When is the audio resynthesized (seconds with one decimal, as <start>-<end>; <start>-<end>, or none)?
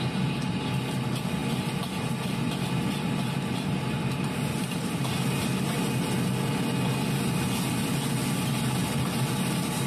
none